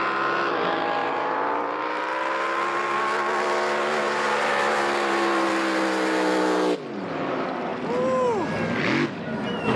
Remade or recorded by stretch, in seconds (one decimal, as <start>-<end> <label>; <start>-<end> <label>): 0.0-1.0 recorded; 1.0-2.0 remade; 2.0-9.8 recorded

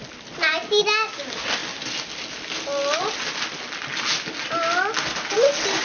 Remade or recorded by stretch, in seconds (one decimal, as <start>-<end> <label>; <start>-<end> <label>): 0.0-5.8 recorded

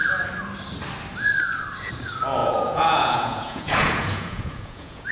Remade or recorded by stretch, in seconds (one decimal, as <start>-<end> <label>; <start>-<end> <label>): 0.0-2.4 recorded; 2.4-5.1 remade

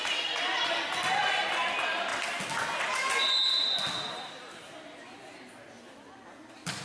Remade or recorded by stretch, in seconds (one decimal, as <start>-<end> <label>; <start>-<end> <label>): 0.0-6.8 recorded